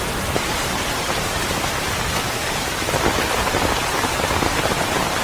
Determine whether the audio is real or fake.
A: fake